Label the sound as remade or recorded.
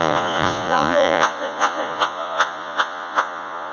remade